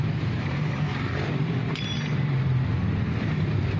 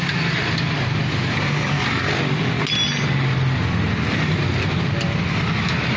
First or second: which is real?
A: second